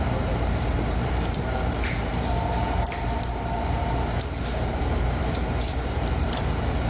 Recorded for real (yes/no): no